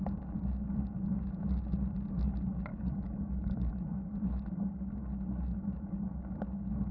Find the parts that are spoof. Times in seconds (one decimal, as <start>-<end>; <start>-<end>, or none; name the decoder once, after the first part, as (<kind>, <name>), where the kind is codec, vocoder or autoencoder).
2.7-3.7 (codec, DAC)